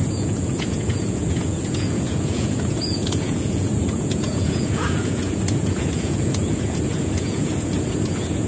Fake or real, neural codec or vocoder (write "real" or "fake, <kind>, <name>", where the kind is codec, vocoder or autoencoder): fake, vocoder, Vocos